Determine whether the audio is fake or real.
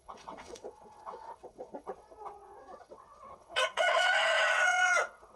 fake